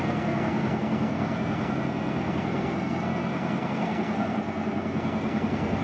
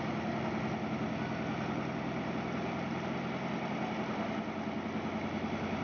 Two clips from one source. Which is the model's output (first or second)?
first